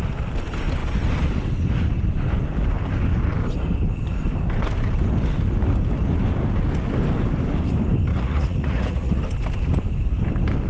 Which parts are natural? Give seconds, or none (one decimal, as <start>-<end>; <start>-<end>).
0.0-8.1; 9.2-10.7